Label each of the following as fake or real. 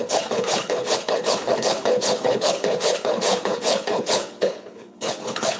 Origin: fake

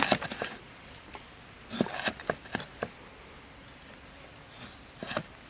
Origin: real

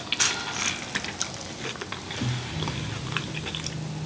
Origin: real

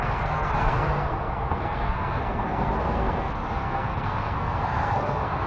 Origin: fake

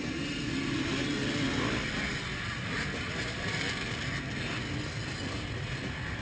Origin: real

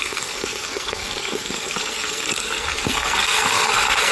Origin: fake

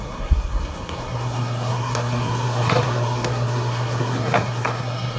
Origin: fake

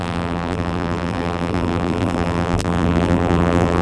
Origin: fake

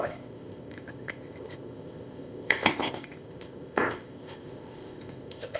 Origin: fake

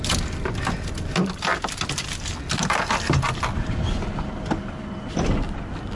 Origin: real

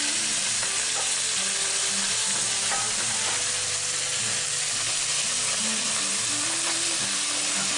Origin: real